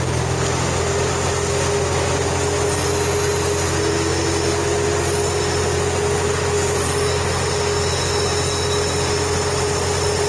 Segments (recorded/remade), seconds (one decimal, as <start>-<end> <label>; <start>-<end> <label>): 0.0-10.3 recorded